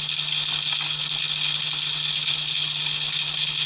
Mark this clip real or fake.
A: real